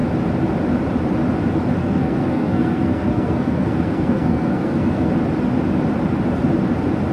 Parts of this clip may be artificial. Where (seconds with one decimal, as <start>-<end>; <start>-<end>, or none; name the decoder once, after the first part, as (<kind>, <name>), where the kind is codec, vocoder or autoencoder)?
1.8-5.1 (codec, SNAC)